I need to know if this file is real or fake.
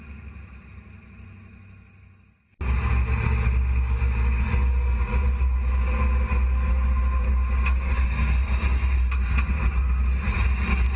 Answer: real